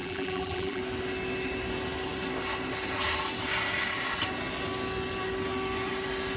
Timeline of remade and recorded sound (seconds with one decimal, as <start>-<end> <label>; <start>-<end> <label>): 0.0-0.8 remade; 0.8-6.4 recorded